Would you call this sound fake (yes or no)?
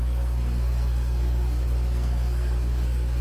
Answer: yes